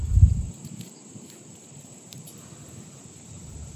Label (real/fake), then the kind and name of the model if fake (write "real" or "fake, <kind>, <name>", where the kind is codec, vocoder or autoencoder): fake, vocoder, BigVGAN v2